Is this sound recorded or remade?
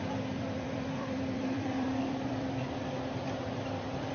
remade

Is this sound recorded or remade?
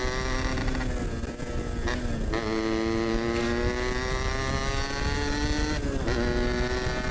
recorded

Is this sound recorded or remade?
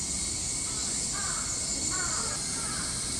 recorded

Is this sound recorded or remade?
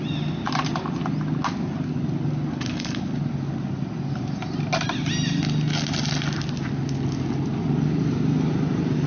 recorded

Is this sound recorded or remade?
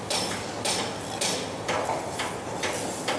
recorded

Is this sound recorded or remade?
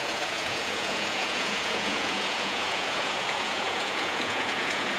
remade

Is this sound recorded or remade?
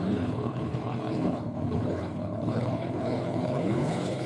remade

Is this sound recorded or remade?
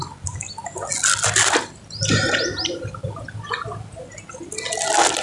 recorded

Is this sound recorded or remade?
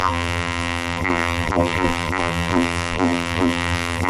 remade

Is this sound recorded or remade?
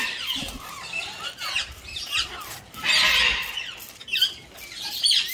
remade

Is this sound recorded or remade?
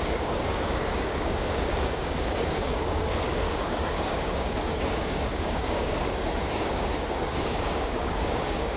remade